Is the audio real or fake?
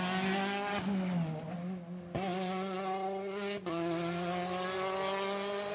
real